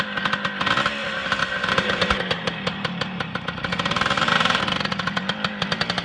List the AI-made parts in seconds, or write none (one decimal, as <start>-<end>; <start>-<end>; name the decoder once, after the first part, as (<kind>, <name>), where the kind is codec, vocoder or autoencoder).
1.0-4.6 (vocoder, BigVGAN v2)